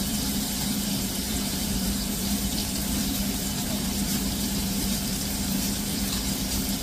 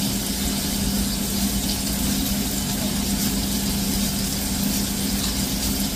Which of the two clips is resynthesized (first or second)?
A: first